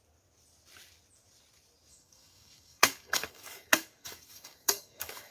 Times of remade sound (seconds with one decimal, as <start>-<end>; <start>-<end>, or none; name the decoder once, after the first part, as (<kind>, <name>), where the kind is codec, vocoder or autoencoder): 1.9-5.3 (codec, DAC)